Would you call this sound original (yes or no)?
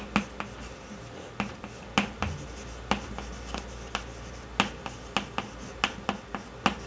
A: yes